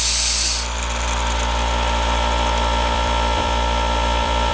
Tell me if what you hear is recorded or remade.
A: remade